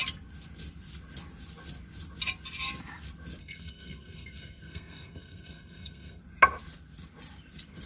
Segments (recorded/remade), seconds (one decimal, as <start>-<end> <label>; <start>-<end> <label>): 0.0-3.4 recorded; 3.4-6.2 remade; 6.2-7.9 recorded